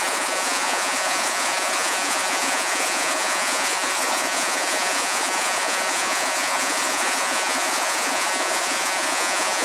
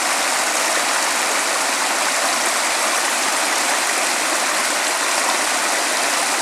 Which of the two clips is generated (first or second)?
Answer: first